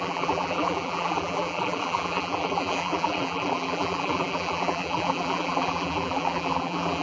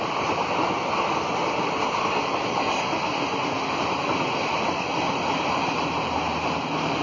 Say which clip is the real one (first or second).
second